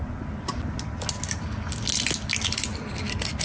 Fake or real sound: real